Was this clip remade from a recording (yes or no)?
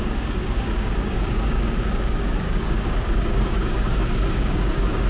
yes